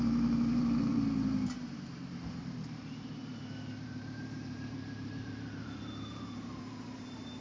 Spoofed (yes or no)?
yes